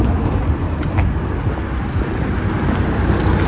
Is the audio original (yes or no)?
yes